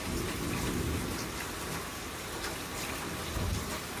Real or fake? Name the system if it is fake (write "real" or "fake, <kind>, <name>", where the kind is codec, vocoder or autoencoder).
real